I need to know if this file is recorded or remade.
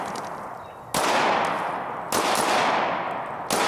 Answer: recorded